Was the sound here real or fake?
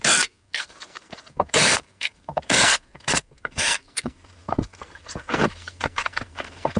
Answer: fake